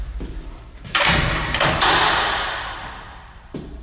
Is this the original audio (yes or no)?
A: no